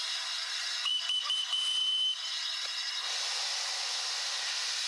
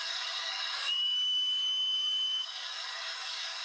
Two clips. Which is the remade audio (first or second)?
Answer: second